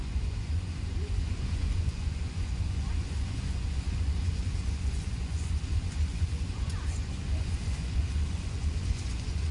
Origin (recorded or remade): remade